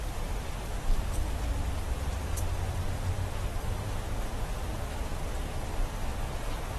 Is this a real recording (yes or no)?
yes